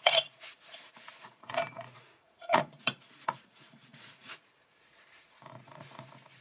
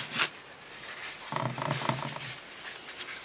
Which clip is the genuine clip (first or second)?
second